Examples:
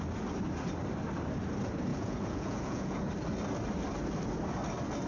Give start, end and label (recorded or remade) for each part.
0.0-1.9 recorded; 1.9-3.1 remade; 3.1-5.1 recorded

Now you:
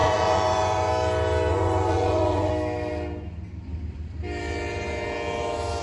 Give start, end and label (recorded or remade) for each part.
0.0-0.9 remade; 0.9-1.5 recorded; 1.5-2.5 remade; 2.5-5.8 recorded

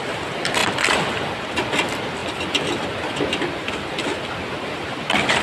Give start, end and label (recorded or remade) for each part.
0.0-5.4 recorded

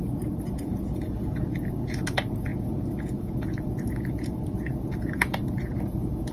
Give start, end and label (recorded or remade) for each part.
0.0-6.3 remade